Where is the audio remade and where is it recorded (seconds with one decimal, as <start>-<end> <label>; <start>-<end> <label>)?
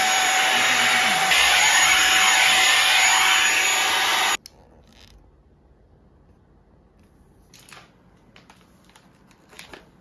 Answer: 0.0-2.0 remade; 2.0-7.0 recorded; 7.0-10.0 remade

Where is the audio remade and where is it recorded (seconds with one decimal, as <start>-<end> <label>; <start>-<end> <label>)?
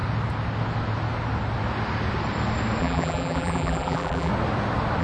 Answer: 0.0-2.8 recorded; 2.8-4.3 remade; 4.3-5.0 recorded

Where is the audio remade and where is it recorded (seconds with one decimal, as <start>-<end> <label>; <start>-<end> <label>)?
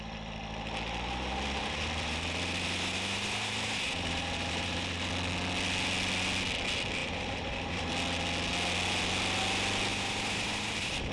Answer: 0.0-1.6 recorded; 1.6-5.1 remade; 5.1-7.0 recorded; 7.0-7.9 remade; 7.9-9.9 recorded; 9.9-11.1 remade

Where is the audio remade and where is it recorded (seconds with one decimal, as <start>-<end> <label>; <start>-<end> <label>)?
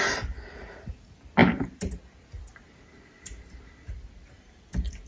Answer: 0.0-1.4 recorded; 1.4-1.9 remade; 1.9-2.5 recorded; 2.5-4.6 remade; 4.6-5.1 recorded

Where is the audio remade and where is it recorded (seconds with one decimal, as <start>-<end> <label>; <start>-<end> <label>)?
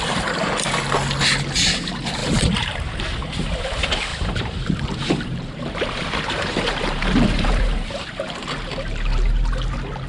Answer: 0.0-2.2 recorded; 2.2-3.0 remade; 3.0-4.1 recorded; 4.1-8.5 remade; 8.5-10.1 recorded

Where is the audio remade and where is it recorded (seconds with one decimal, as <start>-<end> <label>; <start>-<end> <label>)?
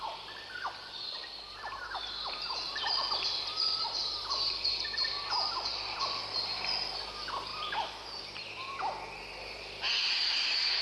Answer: 0.0-1.5 recorded; 1.5-6.2 remade; 6.2-7.5 recorded; 7.5-8.2 remade; 8.2-10.0 recorded; 10.0-10.8 remade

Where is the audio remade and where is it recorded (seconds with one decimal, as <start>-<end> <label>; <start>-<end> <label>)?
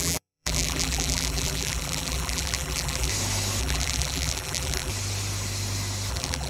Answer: 0.0-3.1 remade; 3.1-3.6 recorded; 3.6-4.9 remade; 4.9-6.1 recorded; 6.1-6.5 remade